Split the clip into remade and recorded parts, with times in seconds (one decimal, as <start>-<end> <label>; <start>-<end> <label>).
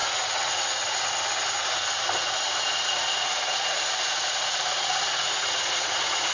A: 0.0-1.1 remade; 1.1-2.2 recorded; 2.2-3.7 remade; 3.7-4.2 recorded; 4.2-6.3 remade